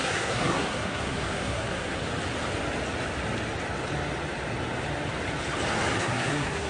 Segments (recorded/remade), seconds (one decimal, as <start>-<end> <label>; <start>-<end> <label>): 0.0-2.0 remade; 2.0-6.0 recorded; 6.0-6.7 remade